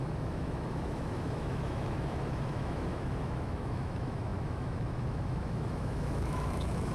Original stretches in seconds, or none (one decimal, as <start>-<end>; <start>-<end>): none